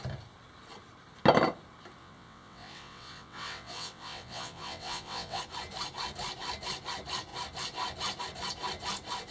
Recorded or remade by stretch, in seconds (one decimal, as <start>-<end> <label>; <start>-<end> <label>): 0.0-2.0 recorded; 2.0-5.4 remade; 5.4-9.3 recorded